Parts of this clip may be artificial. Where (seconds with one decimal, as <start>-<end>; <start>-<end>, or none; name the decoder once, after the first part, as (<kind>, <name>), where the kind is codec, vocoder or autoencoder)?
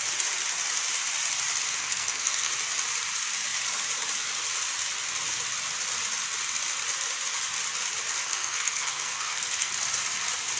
1.8-2.5 (codec, SNAC); 8.2-9.7